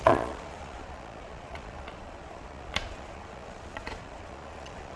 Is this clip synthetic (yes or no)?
yes